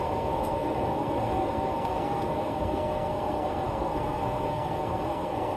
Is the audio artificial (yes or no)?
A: yes